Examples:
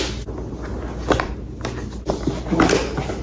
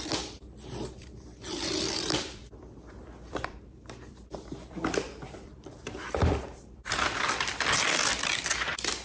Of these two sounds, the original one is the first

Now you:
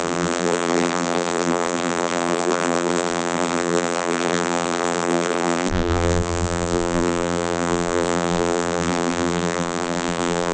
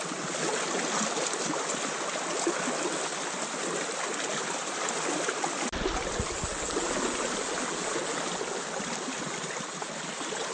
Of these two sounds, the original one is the second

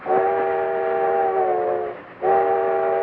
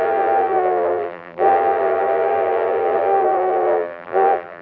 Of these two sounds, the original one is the first